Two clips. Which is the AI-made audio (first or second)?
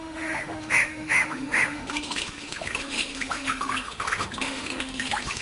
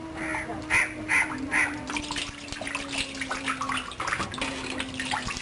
first